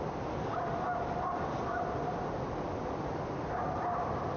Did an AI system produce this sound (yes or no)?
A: no